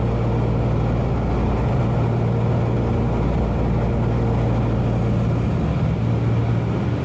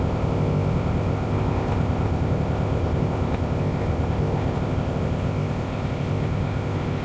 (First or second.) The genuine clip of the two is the first